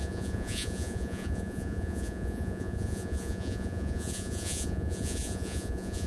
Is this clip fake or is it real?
fake